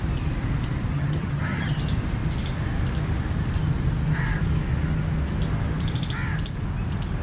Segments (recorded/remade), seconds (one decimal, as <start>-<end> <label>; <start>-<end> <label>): 0.0-0.9 recorded; 0.9-1.8 remade; 1.8-7.2 recorded